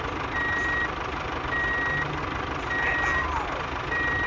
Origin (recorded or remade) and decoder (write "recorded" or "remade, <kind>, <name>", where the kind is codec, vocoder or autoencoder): recorded